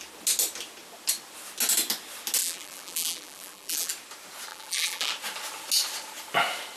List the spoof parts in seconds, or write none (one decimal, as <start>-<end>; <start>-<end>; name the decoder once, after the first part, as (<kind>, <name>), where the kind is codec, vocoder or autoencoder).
2.4-3.9 (vocoder, BigVGAN v2); 4.5-5.1